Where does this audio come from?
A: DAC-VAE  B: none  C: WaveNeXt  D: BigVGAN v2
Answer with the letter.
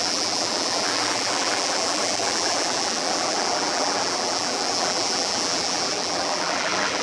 D